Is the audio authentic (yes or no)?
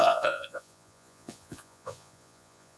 no